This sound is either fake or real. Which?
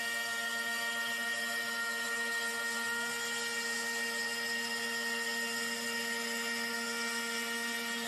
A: real